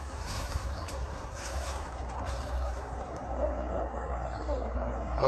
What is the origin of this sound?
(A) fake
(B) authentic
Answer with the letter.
A